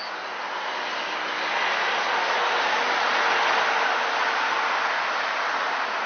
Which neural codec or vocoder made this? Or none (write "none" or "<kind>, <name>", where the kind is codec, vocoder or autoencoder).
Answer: none